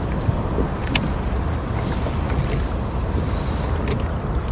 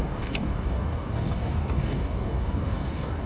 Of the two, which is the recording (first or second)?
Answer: first